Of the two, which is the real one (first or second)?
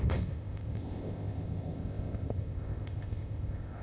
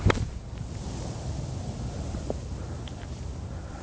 second